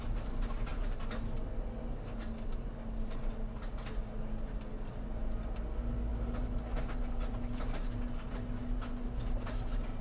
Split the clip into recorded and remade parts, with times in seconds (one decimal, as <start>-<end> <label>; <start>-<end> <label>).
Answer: 0.0-10.0 recorded

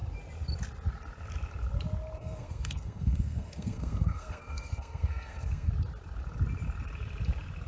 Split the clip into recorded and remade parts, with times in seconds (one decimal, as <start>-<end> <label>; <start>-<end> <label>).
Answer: 0.0-2.2 recorded; 2.2-5.7 remade; 5.7-7.7 recorded